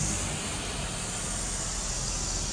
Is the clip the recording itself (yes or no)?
yes